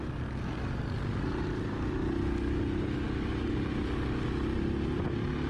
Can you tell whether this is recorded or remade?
recorded